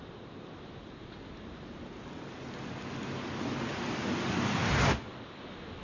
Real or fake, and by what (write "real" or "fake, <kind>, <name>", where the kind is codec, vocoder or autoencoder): real